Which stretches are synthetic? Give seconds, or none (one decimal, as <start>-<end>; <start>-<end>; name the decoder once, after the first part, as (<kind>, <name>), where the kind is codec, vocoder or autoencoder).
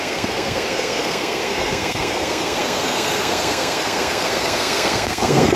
0.0-5.6 (codec, SNAC)